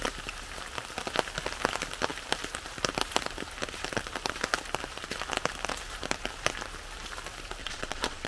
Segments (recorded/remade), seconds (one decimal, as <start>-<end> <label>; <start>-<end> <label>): 0.0-7.6 recorded; 7.6-8.3 remade